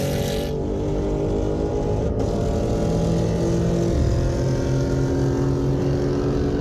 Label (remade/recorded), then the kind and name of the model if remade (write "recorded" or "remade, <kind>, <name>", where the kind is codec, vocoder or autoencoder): recorded